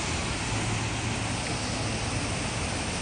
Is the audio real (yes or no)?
yes